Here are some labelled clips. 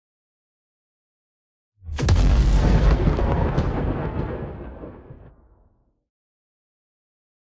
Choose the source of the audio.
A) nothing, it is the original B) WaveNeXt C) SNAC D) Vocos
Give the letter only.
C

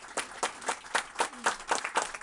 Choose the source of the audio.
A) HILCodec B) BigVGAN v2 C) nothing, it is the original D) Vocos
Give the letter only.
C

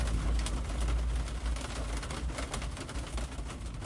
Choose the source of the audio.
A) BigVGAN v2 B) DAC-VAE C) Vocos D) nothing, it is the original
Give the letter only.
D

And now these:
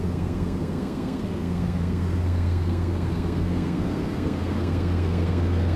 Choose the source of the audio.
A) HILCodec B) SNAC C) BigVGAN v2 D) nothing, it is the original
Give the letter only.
B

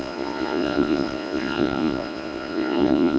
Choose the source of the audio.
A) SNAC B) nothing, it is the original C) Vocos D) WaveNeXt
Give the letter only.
C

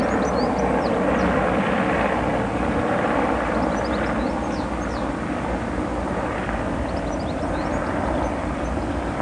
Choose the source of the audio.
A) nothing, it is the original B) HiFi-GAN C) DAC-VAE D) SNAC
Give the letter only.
A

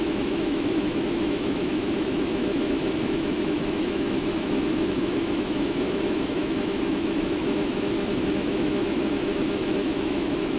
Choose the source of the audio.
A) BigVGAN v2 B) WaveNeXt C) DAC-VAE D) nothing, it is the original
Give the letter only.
C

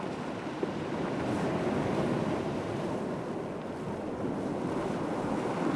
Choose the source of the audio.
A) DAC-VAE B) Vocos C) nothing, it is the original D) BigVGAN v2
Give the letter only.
C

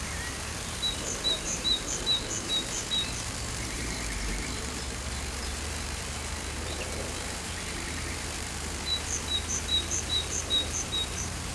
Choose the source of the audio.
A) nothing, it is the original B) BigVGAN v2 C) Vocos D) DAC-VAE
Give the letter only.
B